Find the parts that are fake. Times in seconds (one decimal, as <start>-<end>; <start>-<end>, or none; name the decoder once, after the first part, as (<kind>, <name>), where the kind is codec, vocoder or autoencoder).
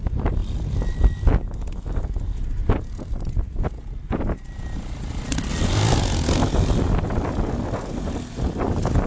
0.4-1.0 (vocoder, BigVGAN v2); 2.6-3.7; 5.5-7.3